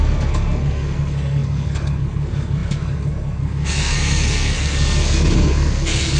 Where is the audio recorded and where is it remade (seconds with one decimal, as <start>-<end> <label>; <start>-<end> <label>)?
0.0-6.2 remade